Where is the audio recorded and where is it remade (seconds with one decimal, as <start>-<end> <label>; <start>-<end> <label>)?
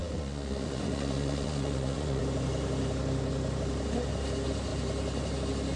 0.0-2.2 remade; 2.2-5.8 recorded